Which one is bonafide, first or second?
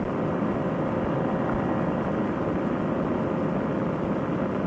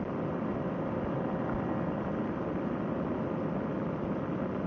first